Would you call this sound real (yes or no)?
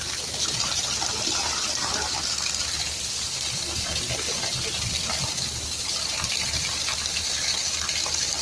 no